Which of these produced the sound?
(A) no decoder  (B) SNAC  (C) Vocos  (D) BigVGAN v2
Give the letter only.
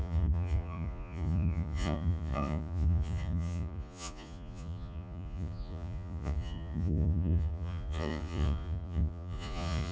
C